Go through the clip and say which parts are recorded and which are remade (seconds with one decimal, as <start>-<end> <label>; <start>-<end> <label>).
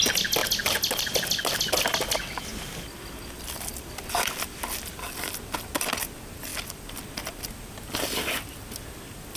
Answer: 0.0-9.4 recorded